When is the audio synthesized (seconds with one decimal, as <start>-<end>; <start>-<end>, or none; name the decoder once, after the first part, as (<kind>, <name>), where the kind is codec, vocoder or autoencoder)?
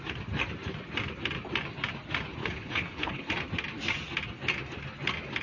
2.4-3.3 (codec, HILCodec)